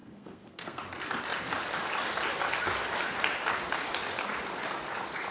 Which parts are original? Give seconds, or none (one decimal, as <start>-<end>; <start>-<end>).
0.8-5.3